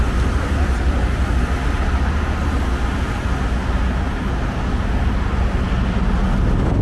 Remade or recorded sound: recorded